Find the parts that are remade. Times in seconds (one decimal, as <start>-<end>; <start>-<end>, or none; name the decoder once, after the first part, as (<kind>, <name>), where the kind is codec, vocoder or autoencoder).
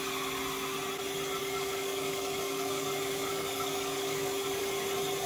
1.4-4.6 (codec, DAC)